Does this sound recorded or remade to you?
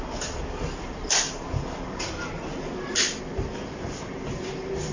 recorded